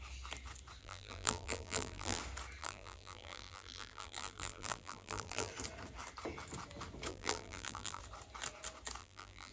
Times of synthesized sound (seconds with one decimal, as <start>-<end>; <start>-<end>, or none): 0.8-2.2; 2.6-5.5; 7.1-8.0; 9.0-9.5